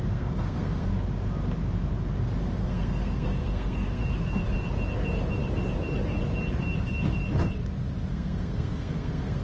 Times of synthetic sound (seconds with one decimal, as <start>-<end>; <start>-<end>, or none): 0.0-0.9; 2.6-4.0; 8.1-9.4